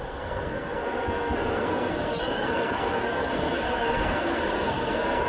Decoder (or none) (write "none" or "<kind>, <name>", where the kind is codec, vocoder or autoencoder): codec, SNAC